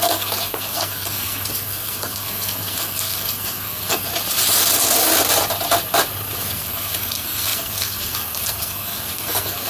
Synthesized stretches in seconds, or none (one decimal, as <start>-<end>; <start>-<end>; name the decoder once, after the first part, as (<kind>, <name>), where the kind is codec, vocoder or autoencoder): 0.0-4.1 (codec, SNAC); 6.4-9.7